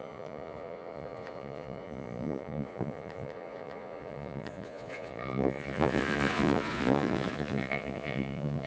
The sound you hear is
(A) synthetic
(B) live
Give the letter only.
A